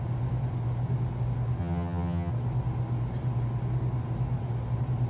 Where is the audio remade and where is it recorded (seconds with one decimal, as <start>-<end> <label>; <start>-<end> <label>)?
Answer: 0.0-1.6 recorded; 1.6-2.3 remade; 2.3-5.1 recorded